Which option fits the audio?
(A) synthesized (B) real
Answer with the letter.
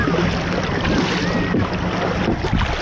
B